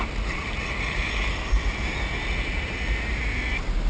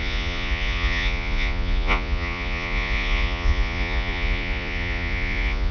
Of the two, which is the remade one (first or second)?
second